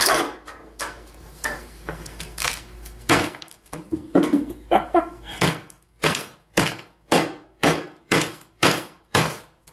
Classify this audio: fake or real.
fake